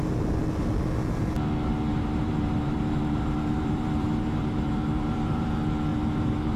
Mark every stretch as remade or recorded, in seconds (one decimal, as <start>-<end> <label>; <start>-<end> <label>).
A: 0.0-1.9 recorded; 1.9-5.5 remade; 5.5-5.9 recorded; 5.9-6.6 remade